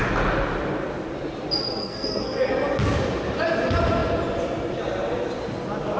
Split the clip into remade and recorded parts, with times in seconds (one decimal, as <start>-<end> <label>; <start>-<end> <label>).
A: 0.0-1.8 recorded; 1.8-2.5 remade; 2.5-6.0 recorded